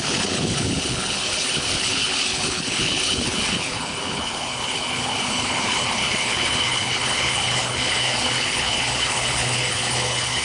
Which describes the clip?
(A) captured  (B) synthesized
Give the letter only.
B